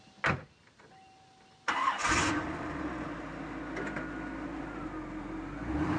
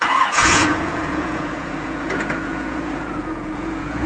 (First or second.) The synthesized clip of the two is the second